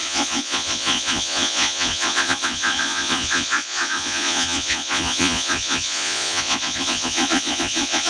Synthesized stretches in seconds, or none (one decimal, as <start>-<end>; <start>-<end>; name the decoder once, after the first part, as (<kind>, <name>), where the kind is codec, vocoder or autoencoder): 0.0-8.1 (vocoder, Vocos)